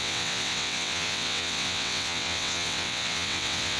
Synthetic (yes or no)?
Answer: yes